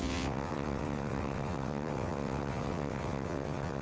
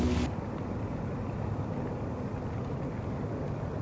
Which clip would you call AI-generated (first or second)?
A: first